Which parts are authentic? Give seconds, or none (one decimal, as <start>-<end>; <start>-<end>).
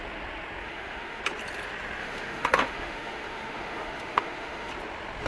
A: 0.0-0.6; 1.2-2.0; 4.7-5.3